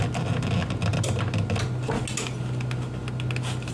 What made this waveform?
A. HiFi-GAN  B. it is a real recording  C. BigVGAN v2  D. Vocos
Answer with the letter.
B